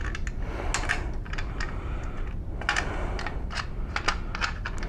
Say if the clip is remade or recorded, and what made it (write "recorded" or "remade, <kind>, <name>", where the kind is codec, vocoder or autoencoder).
recorded